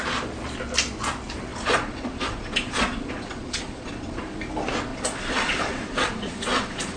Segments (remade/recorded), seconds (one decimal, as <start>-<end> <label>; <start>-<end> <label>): 0.0-1.5 recorded; 1.5-4.4 remade; 4.4-4.9 recorded; 4.9-7.0 remade